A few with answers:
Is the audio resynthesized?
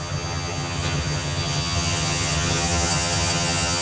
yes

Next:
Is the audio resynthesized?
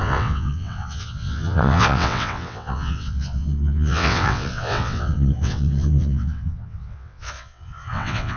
yes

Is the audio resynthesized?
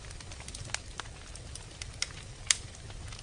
no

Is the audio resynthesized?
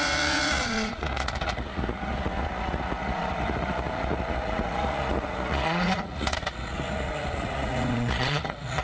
yes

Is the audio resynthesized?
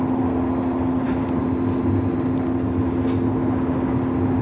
no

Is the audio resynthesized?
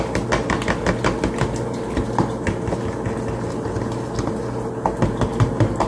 no